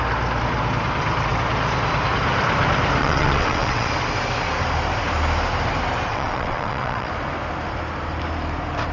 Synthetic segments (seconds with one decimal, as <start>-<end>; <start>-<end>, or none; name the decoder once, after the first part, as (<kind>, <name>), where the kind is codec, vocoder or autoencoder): 3.0-3.9 (vocoder, WaveNeXt); 6.1-7.1